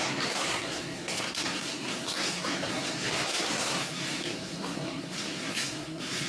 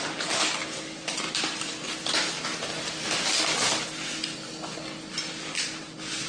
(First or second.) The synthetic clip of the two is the first